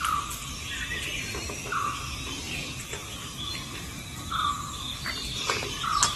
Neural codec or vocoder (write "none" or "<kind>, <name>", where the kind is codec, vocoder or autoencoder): none